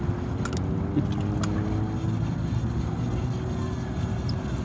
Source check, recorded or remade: recorded